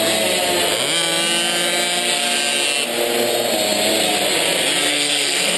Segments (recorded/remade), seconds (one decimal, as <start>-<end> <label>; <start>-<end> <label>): 0.0-4.9 recorded; 4.9-5.6 remade